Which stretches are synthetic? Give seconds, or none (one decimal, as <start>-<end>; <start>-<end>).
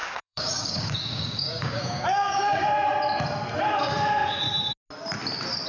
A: 0.0-2.6